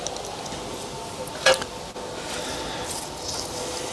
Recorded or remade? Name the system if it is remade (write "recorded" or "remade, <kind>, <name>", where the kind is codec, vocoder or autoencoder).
recorded